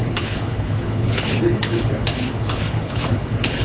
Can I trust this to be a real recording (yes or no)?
no